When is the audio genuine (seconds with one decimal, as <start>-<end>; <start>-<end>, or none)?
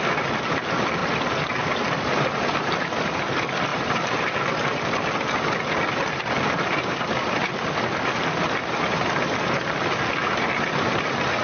0.0-11.4